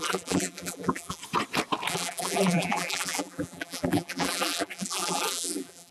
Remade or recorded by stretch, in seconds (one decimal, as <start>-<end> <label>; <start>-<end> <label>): 0.0-1.2 remade; 1.2-1.9 recorded; 1.9-5.9 remade